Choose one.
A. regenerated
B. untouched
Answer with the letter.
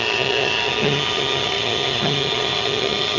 A